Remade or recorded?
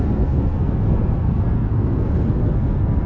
remade